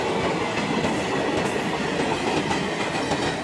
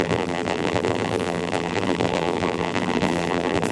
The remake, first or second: second